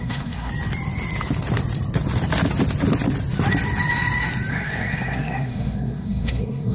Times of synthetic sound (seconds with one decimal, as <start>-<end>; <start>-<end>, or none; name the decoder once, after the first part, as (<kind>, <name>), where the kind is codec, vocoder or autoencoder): 0.0-0.5 (codec, SNAC); 4.5-6.7